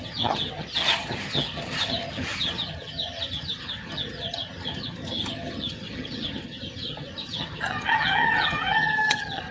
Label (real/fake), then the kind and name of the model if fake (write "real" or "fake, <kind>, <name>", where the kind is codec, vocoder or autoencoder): fake, vocoder, HiFi-GAN